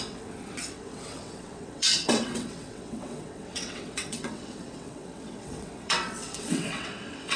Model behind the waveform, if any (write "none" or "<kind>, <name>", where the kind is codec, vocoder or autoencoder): vocoder, WaveNeXt